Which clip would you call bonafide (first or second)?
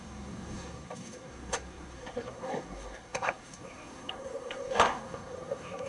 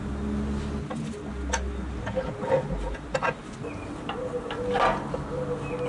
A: second